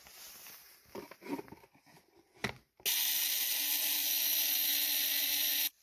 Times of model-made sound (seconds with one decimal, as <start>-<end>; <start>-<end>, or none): none